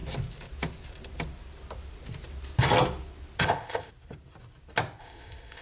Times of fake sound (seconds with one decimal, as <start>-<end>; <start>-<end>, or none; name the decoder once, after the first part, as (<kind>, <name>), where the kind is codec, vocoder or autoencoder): 3.4-3.9 (codec, ZipCodec); 5.0-5.6